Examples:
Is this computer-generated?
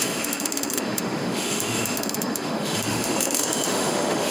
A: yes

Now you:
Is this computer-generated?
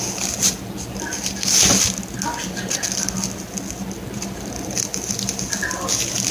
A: no